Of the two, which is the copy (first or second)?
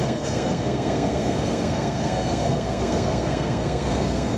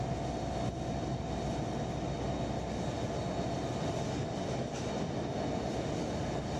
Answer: first